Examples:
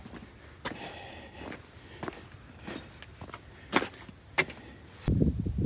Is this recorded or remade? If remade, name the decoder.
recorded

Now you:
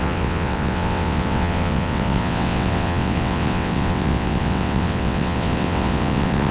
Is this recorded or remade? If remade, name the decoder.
remade, vocoder, WaveNeXt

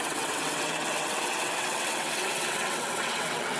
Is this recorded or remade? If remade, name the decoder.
remade, vocoder, WaveNeXt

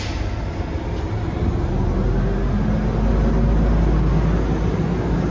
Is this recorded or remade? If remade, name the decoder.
recorded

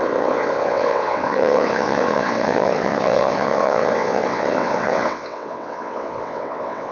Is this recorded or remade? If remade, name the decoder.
remade, vocoder, WaveNeXt